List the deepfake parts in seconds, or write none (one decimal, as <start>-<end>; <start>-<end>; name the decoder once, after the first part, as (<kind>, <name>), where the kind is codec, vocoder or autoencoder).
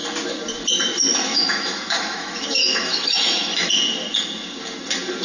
1.3-3.7 (autoencoder, DAC-VAE)